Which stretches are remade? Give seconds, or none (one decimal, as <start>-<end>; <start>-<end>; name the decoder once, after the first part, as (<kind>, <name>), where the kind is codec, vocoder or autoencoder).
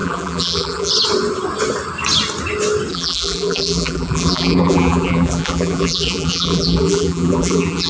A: 0.0-0.9 (vocoder, BigVGAN v2); 2.9-7.9